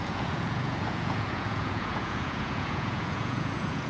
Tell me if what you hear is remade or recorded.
remade